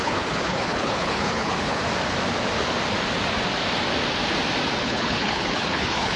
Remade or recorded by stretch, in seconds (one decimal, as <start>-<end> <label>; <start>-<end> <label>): 0.0-1.8 remade; 1.8-4.8 recorded; 4.8-6.2 remade